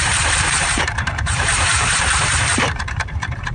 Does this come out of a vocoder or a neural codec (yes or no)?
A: yes